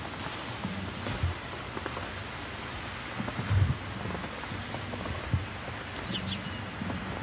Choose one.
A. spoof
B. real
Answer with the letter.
B